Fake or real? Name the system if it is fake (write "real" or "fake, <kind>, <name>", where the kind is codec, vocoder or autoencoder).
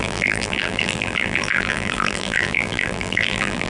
fake, vocoder, BigVGAN v2